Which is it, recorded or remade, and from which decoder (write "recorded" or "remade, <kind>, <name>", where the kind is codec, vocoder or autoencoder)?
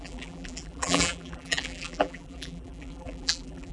remade, vocoder, BigVGAN v2